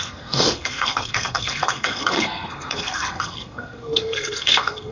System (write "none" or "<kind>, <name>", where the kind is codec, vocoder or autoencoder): codec, SNAC